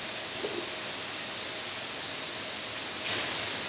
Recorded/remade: recorded